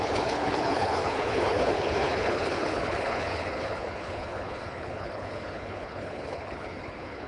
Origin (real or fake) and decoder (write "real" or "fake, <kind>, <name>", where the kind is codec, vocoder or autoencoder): fake, codec, HILCodec